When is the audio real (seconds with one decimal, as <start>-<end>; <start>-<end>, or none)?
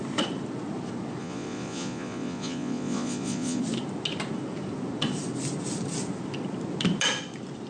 0.0-1.2; 3.6-7.7